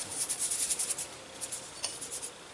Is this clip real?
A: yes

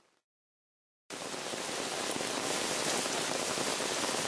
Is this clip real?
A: yes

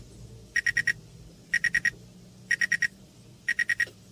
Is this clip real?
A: yes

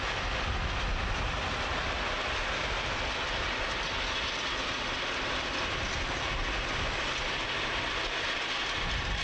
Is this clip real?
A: yes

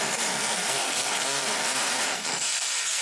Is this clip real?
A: no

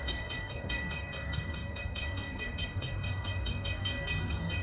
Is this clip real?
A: no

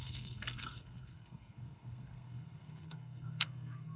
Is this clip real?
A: no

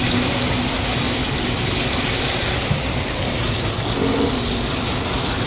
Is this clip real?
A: yes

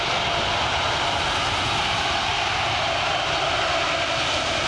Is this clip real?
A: yes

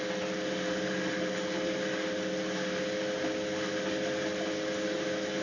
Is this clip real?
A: yes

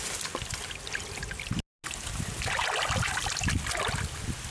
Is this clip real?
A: yes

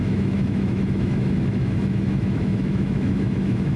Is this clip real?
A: no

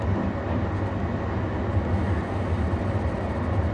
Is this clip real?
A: yes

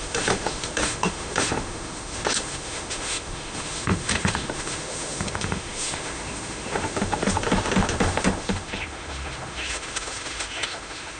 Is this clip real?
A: no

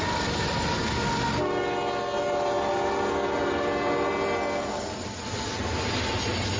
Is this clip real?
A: yes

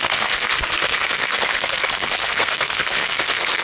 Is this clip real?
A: no